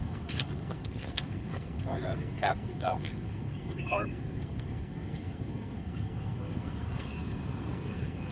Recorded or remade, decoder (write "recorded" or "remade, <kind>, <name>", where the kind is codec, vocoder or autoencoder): remade, codec, SNAC